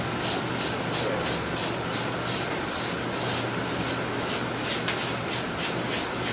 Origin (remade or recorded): recorded